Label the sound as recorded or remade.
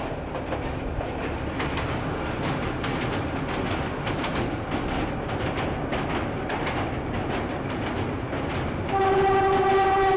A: recorded